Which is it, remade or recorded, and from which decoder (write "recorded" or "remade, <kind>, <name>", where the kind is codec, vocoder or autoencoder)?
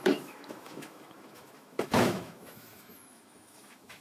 remade, autoencoder, DAC-VAE